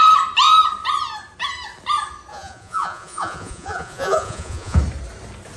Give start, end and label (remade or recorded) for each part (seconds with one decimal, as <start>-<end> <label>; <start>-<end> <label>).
0.0-2.3 recorded; 2.3-4.8 remade; 4.8-5.6 recorded